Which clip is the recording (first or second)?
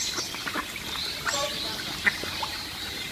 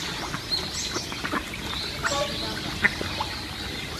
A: second